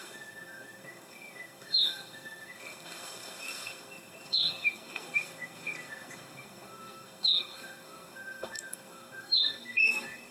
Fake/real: fake